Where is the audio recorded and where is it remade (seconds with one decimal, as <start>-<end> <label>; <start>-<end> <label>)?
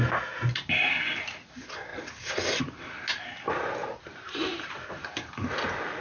0.0-3.8 recorded; 3.8-5.2 remade; 5.2-6.0 recorded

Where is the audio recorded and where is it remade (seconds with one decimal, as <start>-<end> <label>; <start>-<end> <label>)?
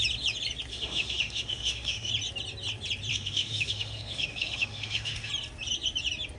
0.0-0.7 recorded; 0.7-2.1 remade; 2.1-3.1 recorded; 3.1-5.3 remade; 5.3-6.4 recorded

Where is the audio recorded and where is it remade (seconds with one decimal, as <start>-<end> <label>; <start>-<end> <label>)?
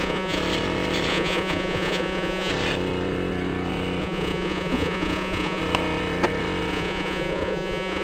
0.0-0.4 remade; 0.4-1.1 recorded; 1.1-2.5 remade; 2.5-4.0 recorded; 4.0-5.6 remade; 5.6-6.7 recorded; 6.7-8.0 remade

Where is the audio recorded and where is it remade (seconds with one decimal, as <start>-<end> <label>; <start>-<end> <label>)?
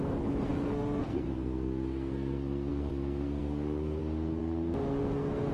0.0-5.5 remade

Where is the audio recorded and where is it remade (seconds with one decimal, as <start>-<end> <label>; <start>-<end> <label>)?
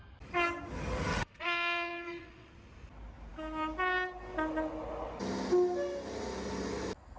0.0-1.1 recorded; 1.1-2.5 remade; 2.5-7.2 recorded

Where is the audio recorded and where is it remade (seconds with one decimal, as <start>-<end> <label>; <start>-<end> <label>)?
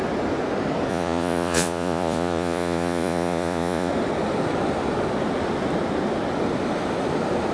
0.0-0.9 recorded; 0.9-3.9 remade; 3.9-7.5 recorded